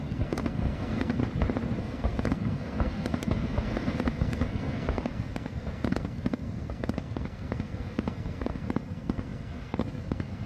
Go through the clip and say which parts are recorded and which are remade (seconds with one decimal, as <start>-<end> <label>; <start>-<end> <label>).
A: 0.0-1.2 remade; 1.2-1.8 recorded; 1.8-10.5 remade